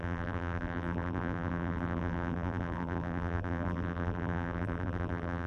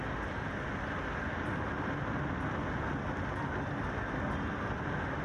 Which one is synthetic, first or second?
first